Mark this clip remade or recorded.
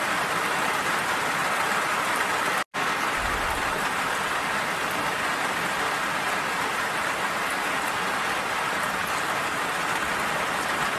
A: recorded